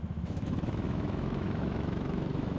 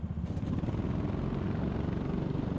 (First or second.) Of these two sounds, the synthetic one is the first